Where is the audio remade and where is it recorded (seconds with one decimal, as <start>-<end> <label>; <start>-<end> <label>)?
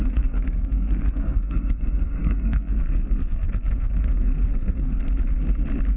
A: 0.0-5.0 remade; 5.0-6.0 recorded